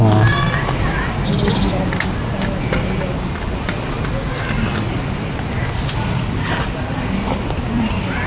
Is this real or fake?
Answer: real